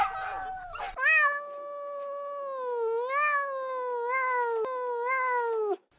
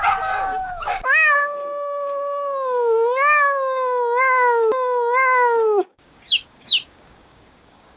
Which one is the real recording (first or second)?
first